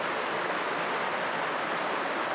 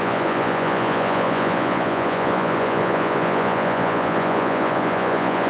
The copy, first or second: second